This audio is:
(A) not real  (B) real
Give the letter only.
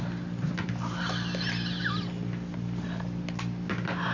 B